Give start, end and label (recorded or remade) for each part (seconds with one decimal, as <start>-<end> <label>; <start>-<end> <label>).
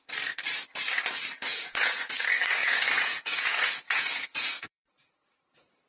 0.0-1.5 recorded; 1.5-2.2 remade; 2.2-2.6 recorded; 2.6-5.2 remade; 5.2-5.9 recorded